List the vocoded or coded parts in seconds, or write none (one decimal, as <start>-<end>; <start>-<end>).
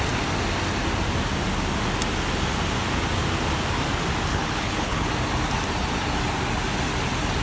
4.3-5.1